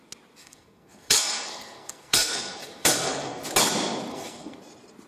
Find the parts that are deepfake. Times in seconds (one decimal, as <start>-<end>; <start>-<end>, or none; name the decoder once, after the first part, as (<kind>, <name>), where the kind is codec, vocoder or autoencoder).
0.4-3.5 (codec, SNAC); 4.1-4.6